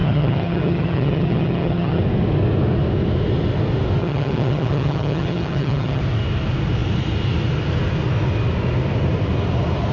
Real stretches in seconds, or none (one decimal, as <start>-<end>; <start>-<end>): 2.0-4.0; 6.0-9.9